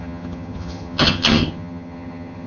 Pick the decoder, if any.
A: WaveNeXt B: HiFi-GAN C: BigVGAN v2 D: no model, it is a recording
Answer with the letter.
B